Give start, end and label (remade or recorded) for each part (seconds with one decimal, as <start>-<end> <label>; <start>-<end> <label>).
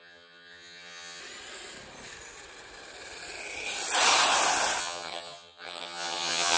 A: 0.0-1.2 remade; 1.2-4.8 recorded; 4.8-6.6 remade